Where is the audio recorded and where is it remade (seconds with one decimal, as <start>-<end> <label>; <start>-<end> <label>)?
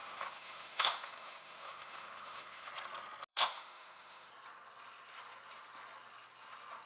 0.0-2.7 remade; 2.7-3.3 recorded; 3.3-4.3 remade; 4.3-6.9 recorded